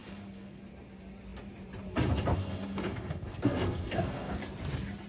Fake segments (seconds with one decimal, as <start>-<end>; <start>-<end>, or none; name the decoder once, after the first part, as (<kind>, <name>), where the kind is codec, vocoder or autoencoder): 0.0-0.6 (codec, SNAC); 2.3-4.4